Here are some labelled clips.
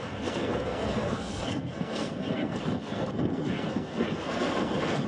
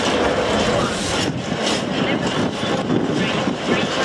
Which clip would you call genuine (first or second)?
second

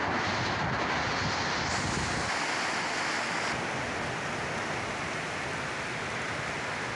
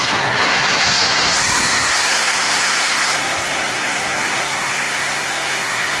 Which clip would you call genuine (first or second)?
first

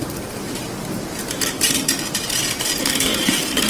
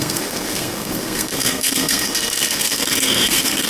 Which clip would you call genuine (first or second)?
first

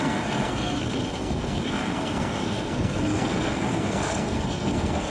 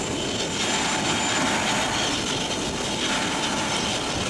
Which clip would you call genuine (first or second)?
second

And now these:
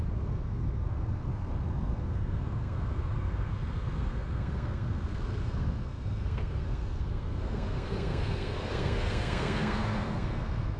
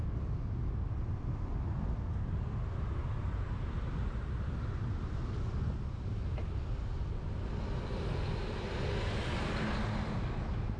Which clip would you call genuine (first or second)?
second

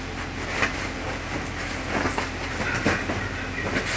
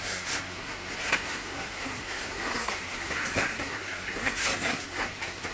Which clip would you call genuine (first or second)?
first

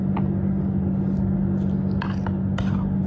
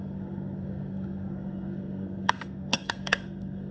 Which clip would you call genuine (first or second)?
first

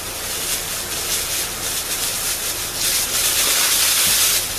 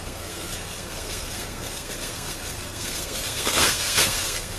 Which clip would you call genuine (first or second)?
first